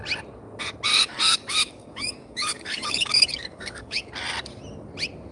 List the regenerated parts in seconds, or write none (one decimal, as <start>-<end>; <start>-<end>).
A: 0.9-4.1